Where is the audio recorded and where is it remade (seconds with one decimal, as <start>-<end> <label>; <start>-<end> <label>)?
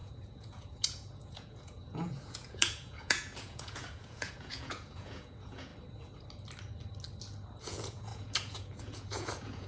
0.0-5.7 remade; 5.7-7.6 recorded; 7.6-9.7 remade